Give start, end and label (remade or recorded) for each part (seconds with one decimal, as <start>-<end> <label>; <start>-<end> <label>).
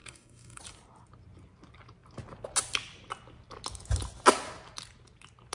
0.0-0.6 remade; 0.6-5.5 recorded